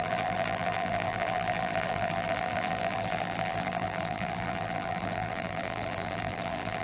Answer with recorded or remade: remade